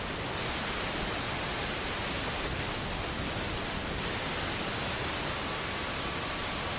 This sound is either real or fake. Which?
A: real